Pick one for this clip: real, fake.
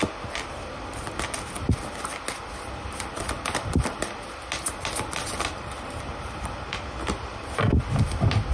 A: real